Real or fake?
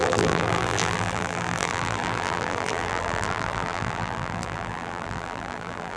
fake